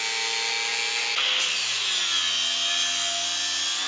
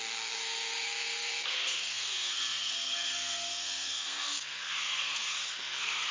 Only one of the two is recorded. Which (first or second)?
first